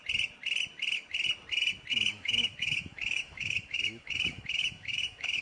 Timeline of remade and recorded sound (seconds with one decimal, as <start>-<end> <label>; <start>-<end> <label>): 0.0-1.9 recorded; 1.9-5.4 remade